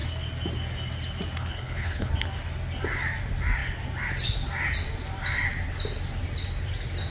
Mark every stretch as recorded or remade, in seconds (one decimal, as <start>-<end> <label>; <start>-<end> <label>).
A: 0.0-1.4 recorded; 1.4-2.1 remade; 2.1-7.1 recorded